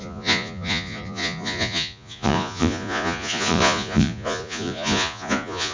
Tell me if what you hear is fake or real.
fake